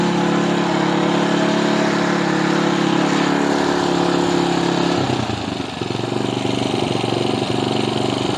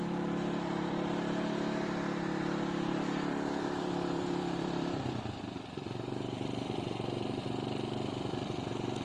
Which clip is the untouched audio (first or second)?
first